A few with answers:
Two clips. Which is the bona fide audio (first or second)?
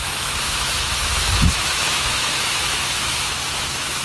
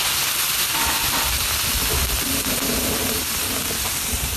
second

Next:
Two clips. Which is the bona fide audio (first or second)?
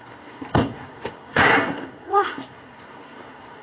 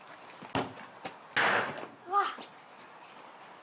second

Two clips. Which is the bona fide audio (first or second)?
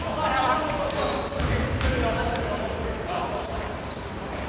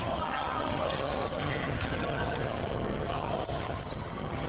first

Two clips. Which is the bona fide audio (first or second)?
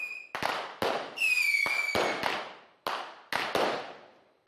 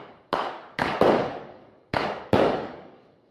first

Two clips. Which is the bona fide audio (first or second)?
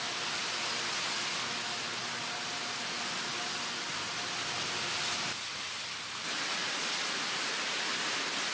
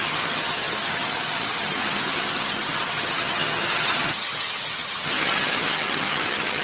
first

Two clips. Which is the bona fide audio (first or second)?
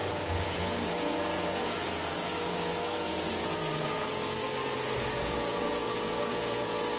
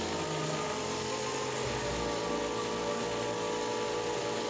second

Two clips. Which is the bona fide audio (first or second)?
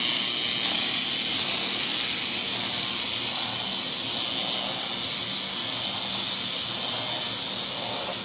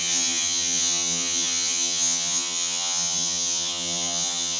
first